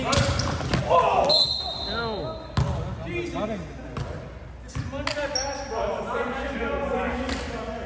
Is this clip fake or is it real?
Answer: real